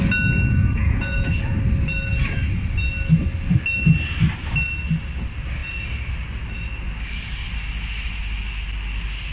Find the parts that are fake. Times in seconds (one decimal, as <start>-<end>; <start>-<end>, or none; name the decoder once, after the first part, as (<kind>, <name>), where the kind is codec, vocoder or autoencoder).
0.6-1.3 (vocoder, Vocos)